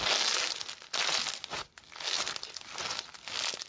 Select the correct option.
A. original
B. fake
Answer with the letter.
A